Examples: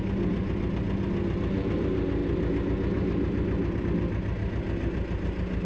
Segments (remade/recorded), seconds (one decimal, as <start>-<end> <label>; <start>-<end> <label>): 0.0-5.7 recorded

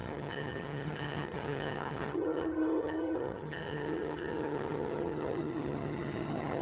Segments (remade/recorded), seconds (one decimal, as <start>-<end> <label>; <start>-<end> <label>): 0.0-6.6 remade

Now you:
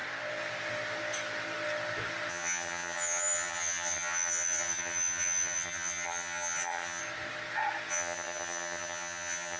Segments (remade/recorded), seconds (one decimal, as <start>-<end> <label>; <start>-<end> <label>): 0.0-2.3 recorded; 2.3-7.0 remade; 7.0-7.9 recorded; 7.9-9.6 remade

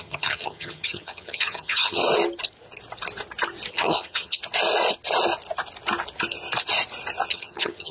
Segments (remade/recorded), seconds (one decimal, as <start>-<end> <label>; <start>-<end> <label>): 0.0-2.0 remade; 2.0-3.7 recorded; 3.7-4.4 remade; 4.4-7.3 recorded; 7.3-7.9 remade

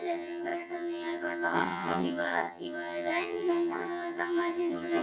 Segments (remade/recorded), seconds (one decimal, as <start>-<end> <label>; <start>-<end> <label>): 0.0-5.0 remade